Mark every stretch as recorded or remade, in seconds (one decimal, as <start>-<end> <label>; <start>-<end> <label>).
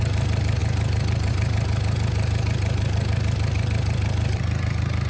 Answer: 0.0-5.1 remade